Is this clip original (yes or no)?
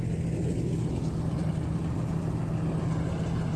yes